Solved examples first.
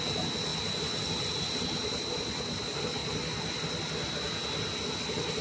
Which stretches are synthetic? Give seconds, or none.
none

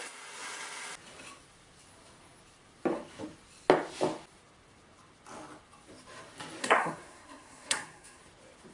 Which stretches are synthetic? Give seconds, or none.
6.6-8.2 (codec, SNAC)

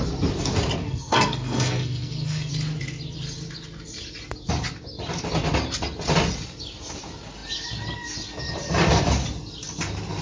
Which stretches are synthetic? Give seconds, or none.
0.8-2.5 (codec, SNAC)

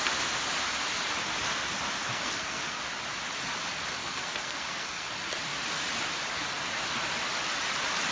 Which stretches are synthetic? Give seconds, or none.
2.1-2.8 (codec, SNAC); 4.0-5.1

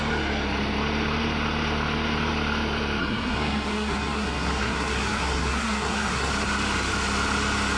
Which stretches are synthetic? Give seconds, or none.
3.0-6.3 (codec, SNAC)